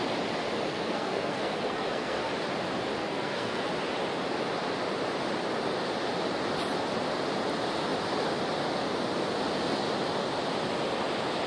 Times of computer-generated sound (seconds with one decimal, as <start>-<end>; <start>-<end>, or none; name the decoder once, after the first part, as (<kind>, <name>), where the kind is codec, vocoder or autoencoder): 0.7-2.3 (codec, SNAC); 3.0-3.7

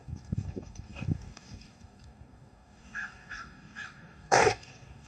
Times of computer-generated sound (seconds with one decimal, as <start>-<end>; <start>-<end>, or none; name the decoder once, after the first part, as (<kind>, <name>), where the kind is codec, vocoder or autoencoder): 0.0-5.1 (codec, DAC)

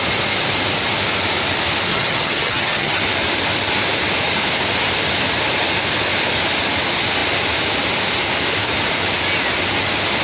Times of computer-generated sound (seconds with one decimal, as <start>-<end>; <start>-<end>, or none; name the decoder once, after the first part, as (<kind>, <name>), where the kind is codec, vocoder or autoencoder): 1.9-3.0 (vocoder, HiFi-GAN)

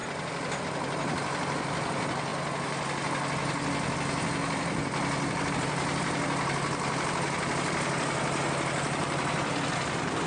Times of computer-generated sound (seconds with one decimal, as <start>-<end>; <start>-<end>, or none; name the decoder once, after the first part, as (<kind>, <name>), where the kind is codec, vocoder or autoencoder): 0.0-2.3 (vocoder, BigVGAN v2); 5.5-5.9; 9.8-10.3

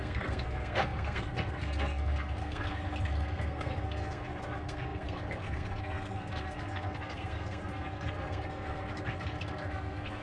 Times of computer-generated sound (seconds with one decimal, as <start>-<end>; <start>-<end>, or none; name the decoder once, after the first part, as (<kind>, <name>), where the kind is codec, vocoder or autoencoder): 0.0-10.2 (codec, SNAC)

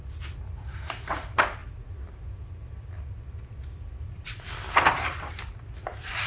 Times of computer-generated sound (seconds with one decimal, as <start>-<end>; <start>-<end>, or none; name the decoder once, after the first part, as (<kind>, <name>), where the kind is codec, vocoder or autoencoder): none

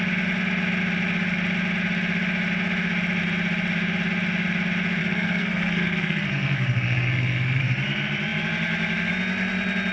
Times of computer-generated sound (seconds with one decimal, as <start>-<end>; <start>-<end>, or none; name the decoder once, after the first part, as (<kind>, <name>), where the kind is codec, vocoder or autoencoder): 5.0-7.6 (codec, SNAC)